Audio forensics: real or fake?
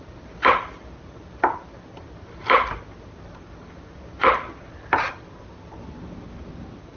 real